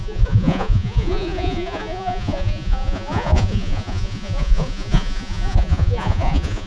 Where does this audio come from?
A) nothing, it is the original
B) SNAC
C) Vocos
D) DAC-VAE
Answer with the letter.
C